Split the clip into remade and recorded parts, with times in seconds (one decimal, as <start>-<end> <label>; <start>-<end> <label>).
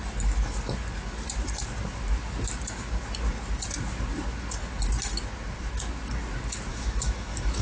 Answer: 0.0-6.7 recorded; 6.7-7.6 remade